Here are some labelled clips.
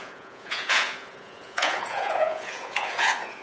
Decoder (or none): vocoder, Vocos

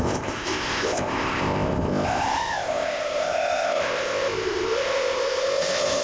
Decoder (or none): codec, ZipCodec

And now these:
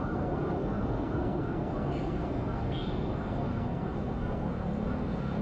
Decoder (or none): codec, SNAC